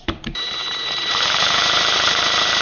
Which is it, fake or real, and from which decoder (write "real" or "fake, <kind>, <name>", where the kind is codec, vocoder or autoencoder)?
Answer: fake, vocoder, BigVGAN v2